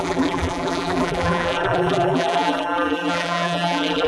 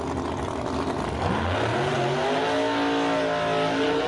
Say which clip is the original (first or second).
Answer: second